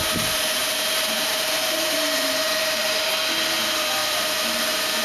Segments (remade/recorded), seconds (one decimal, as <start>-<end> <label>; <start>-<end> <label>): 0.0-0.6 recorded; 0.6-3.1 remade; 3.1-4.0 recorded; 4.0-4.6 remade; 4.6-5.0 recorded